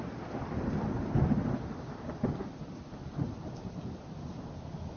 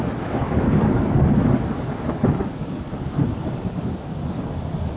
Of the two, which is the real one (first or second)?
first